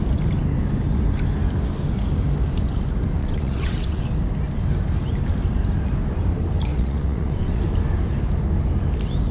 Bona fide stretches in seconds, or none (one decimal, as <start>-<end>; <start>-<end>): 0.0-3.2; 4.0-6.7; 7.6-9.3